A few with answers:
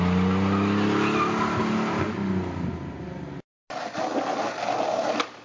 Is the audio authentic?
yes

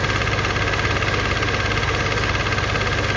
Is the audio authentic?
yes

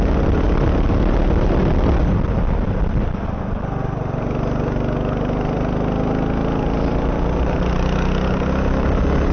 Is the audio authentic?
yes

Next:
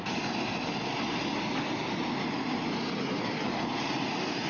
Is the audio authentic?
yes